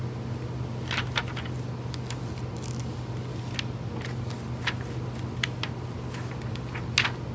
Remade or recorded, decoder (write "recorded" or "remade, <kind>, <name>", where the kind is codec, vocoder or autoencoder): recorded